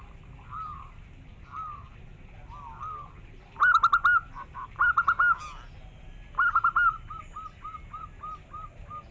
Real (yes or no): yes